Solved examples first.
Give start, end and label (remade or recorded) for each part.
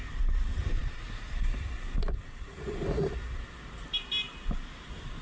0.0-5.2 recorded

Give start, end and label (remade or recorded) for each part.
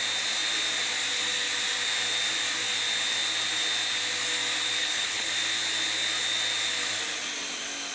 0.0-4.8 recorded; 4.8-5.3 remade; 5.3-7.9 recorded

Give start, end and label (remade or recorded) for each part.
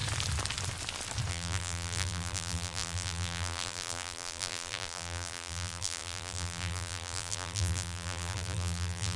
0.0-1.3 recorded; 1.3-9.2 remade